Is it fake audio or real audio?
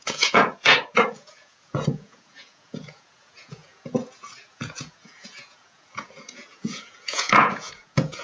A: fake